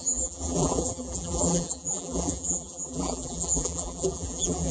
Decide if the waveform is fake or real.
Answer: fake